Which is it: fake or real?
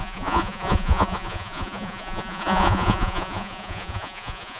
fake